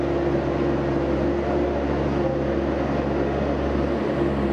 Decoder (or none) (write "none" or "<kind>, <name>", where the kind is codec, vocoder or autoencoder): none